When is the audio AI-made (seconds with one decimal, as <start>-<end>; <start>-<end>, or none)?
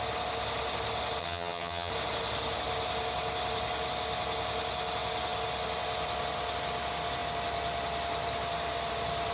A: 1.2-1.9